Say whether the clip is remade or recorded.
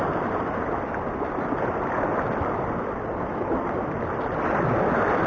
recorded